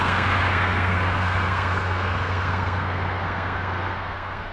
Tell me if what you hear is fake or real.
fake